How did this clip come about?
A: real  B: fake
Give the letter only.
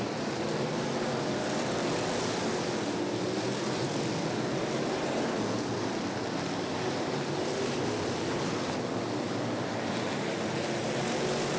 A